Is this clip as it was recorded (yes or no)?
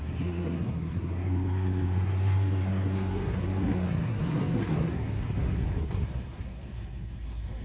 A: no